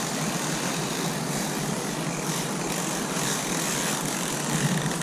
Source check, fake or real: real